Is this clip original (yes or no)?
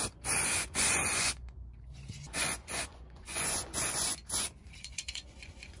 no